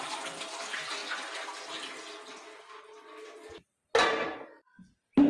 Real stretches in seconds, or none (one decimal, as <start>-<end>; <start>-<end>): 0.0-5.3